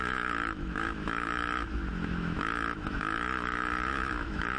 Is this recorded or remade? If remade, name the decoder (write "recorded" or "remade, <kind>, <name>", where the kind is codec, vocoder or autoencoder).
remade, autoencoder, DAC-VAE